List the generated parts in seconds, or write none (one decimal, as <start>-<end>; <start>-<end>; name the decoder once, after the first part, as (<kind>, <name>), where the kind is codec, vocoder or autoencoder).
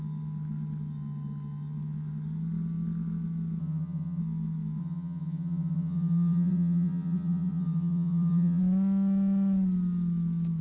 3.6-4.2 (vocoder, HiFi-GAN); 4.8-8.6